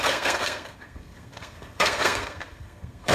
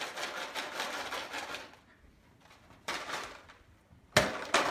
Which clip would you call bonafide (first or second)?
second